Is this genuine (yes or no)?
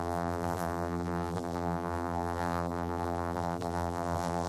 no